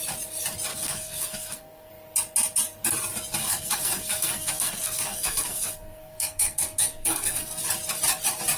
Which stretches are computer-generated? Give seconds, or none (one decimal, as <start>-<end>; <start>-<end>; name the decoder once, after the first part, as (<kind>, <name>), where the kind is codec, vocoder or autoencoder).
0.7-1.9 (codec, SNAC); 3.4-7.6